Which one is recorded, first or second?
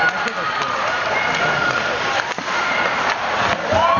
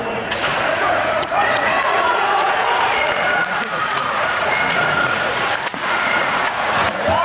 first